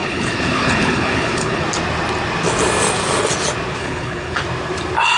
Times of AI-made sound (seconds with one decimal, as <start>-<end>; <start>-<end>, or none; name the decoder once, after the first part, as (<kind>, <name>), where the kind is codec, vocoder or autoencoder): 0.0-1.6 (codec, HILCodec); 3.8-4.4